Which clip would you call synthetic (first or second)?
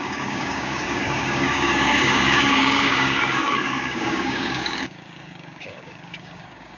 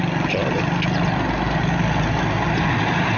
first